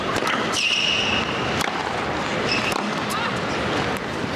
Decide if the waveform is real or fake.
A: real